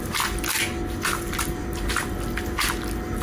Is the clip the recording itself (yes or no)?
yes